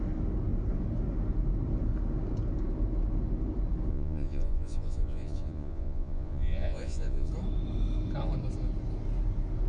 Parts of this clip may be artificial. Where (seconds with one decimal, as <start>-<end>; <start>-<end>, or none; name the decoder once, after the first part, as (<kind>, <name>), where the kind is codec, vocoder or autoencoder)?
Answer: 3.9-7.3 (vocoder, Vocos)